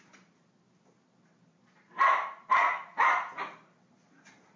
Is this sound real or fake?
real